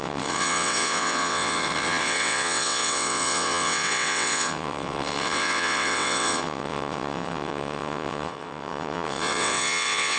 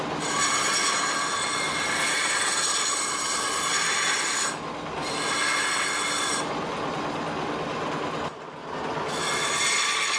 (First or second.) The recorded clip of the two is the second